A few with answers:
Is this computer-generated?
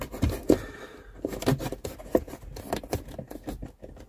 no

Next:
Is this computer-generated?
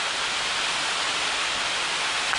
no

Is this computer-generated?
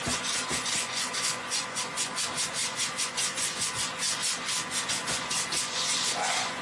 yes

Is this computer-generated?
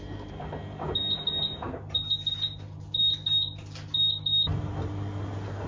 no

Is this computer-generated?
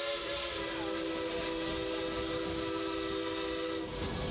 no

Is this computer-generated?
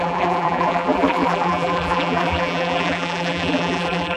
yes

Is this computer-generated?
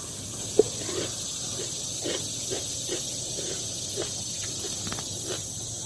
no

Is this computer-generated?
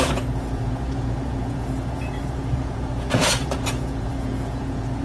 yes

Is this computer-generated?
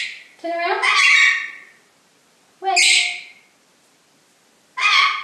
no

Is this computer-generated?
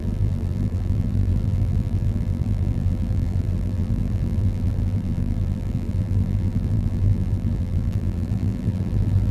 yes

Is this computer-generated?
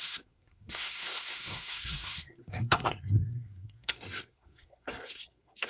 yes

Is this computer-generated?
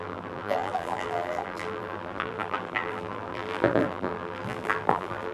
yes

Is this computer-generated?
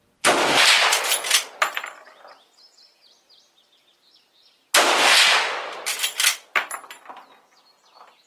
no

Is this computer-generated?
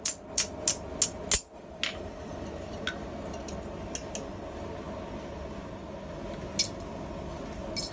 no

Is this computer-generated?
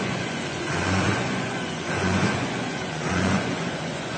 yes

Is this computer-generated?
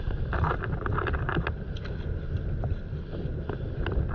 no